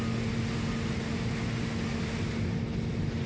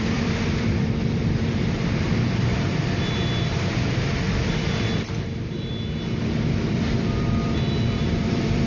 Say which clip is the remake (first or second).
second